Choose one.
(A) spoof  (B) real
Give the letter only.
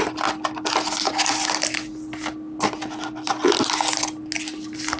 B